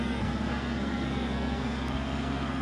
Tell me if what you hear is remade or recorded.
remade